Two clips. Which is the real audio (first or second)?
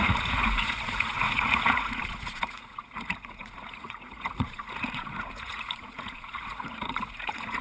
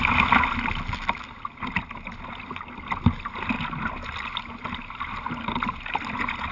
second